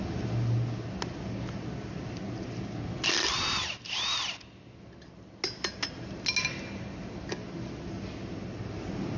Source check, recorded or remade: recorded